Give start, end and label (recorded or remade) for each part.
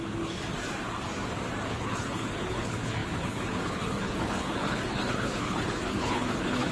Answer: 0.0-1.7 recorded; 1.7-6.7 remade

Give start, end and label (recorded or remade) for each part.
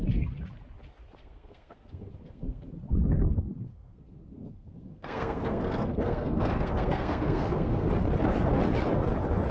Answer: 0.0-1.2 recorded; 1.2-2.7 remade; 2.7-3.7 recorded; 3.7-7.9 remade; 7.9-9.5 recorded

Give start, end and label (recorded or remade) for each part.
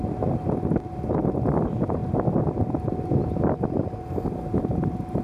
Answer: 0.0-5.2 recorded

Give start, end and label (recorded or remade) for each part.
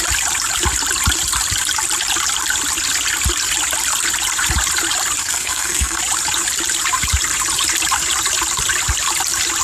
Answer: 0.0-5.2 recorded; 5.2-6.0 remade; 6.0-9.6 recorded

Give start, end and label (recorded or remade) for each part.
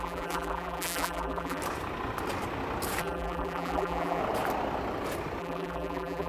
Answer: 0.0-1.6 remade; 1.6-3.0 recorded; 3.0-4.2 remade; 4.2-5.4 recorded; 5.4-6.3 remade